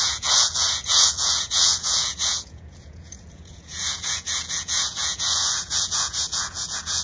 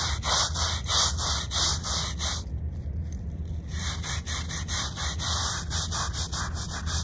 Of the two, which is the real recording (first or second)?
second